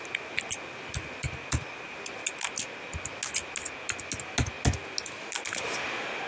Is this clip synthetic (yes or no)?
no